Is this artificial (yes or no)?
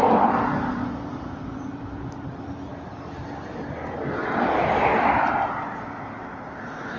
no